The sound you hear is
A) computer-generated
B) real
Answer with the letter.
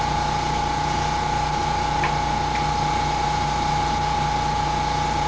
B